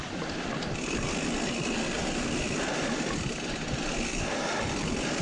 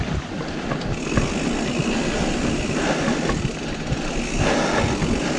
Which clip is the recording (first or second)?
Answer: second